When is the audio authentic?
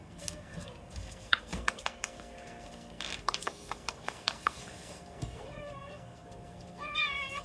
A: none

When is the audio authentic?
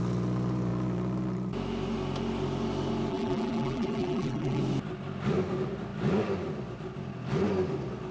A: 0.0-3.1; 4.6-8.1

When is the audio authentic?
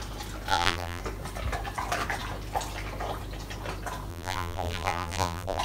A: 0.0-0.5; 1.0-4.1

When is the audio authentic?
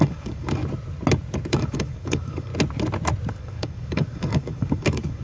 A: 0.6-1.5; 2.5-3.3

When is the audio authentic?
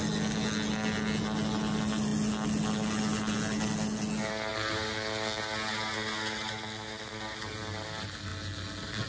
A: 0.0-9.1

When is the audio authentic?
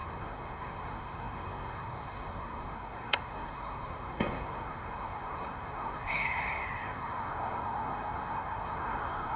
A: none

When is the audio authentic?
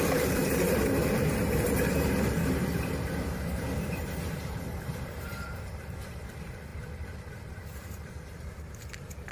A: none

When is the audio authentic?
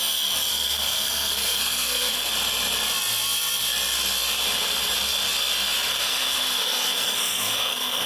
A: 0.0-0.5; 2.3-5.9